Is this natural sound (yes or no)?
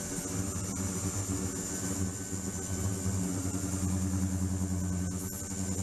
yes